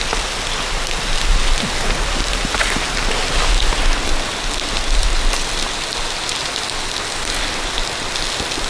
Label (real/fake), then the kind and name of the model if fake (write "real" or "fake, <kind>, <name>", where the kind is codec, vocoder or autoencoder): real